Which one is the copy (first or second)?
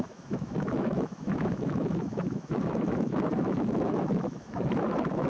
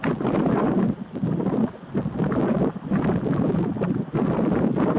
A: first